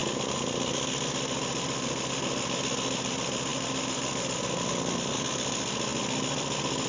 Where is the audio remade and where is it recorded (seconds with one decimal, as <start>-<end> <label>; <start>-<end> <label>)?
0.0-6.9 recorded